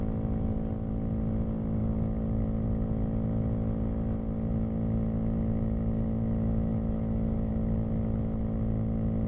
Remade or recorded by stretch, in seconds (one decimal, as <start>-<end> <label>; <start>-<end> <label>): 0.0-6.2 recorded; 6.2-7.5 remade; 7.5-9.3 recorded